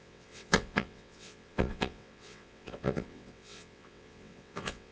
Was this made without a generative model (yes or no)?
no